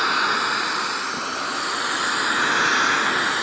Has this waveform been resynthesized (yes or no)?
no